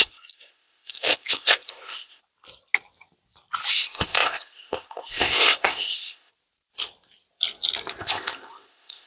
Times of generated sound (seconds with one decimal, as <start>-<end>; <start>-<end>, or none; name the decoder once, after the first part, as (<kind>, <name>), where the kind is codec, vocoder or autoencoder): 0.0-2.2 (codec, ZipCodec); 3.7-6.3; 8.0-9.1